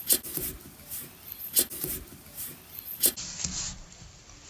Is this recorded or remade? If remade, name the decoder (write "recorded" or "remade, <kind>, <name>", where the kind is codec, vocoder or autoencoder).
recorded